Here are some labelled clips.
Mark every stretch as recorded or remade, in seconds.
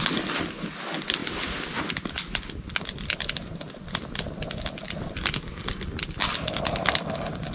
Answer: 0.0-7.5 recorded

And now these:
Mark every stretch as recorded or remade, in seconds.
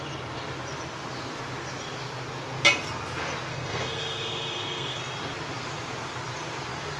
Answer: 0.0-3.5 recorded; 3.5-5.0 remade; 5.0-7.0 recorded